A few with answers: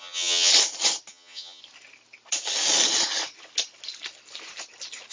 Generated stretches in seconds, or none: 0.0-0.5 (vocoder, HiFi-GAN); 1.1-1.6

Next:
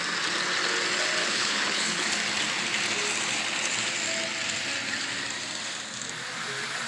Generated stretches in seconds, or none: 1.2-2.1 (codec, HILCodec)